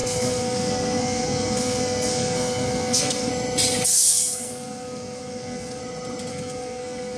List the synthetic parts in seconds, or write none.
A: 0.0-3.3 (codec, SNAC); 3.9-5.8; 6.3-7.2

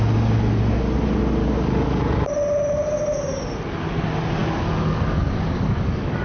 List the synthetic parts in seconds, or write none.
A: 1.4-2.0 (codec, DAC); 4.4-6.2